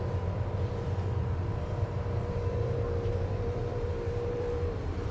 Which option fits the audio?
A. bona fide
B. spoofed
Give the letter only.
B